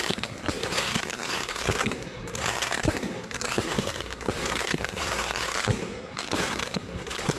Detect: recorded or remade remade